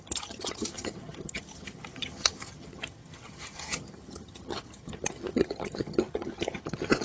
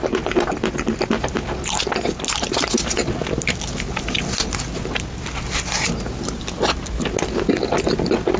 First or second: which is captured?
second